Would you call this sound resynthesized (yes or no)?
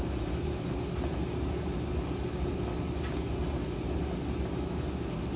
no